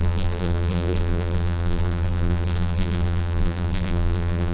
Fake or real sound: fake